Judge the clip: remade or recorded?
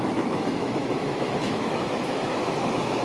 remade